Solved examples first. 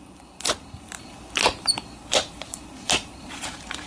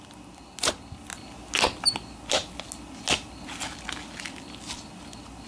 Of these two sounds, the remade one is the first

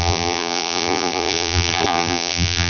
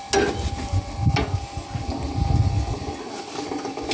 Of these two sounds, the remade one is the first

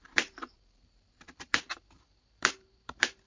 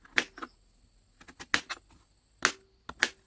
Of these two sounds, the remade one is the first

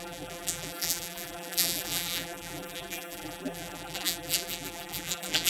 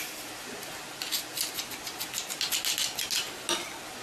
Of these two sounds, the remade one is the first